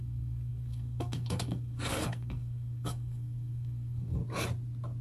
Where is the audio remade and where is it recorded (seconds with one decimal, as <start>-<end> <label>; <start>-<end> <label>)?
0.0-4.2 remade; 4.2-5.0 recorded